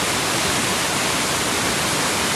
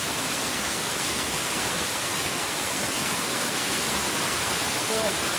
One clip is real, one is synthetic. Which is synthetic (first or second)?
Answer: second